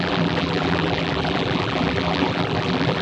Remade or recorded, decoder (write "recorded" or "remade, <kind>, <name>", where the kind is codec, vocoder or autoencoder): remade, vocoder, BigVGAN v2